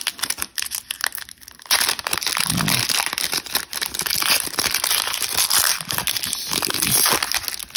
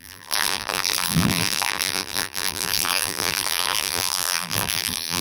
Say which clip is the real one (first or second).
first